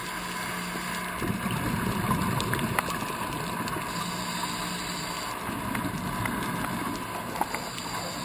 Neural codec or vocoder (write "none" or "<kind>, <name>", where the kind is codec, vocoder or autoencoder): none